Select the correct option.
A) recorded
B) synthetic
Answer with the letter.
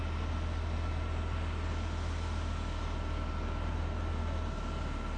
A